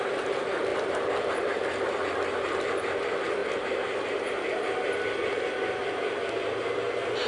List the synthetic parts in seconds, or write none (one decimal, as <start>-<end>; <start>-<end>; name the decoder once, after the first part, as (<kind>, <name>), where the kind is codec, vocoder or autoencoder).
none